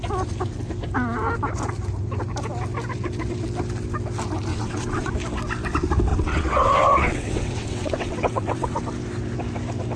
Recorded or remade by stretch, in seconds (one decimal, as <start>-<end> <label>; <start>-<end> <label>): 0.0-4.5 recorded; 4.5-5.1 remade; 5.1-6.1 recorded; 6.1-8.8 remade; 8.8-10.0 recorded